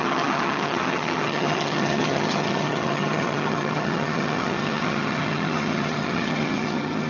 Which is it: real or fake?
fake